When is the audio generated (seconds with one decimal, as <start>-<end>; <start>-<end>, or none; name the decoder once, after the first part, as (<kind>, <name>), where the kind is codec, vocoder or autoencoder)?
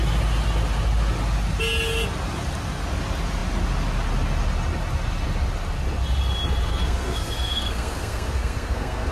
6.7-9.1 (codec, SNAC)